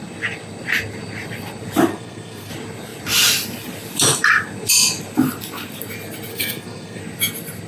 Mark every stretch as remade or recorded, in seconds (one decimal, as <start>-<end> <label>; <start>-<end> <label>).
0.0-1.9 recorded; 1.9-2.5 remade; 2.5-6.3 recorded; 6.3-7.0 remade; 7.0-7.7 recorded